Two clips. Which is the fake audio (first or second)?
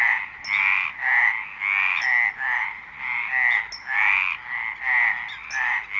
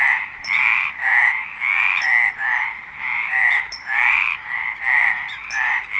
second